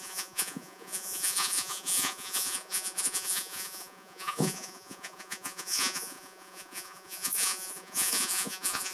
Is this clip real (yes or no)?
no